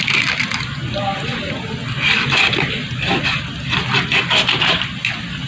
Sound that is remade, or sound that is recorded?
recorded